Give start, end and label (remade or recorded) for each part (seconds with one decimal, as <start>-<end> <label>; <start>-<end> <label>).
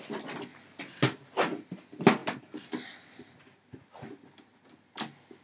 0.0-5.4 recorded